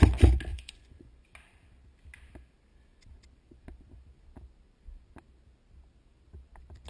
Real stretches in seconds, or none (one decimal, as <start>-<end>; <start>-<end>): 0.0-0.5; 1.1-6.9